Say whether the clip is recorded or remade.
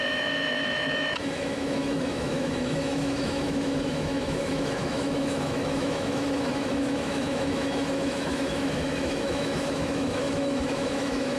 remade